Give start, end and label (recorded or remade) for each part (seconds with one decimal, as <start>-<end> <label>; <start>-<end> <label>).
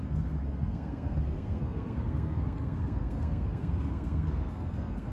0.0-5.1 remade